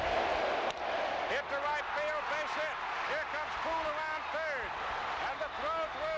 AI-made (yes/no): no